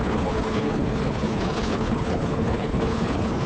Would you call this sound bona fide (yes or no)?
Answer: no